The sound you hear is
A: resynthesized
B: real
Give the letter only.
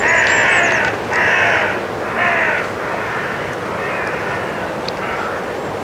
B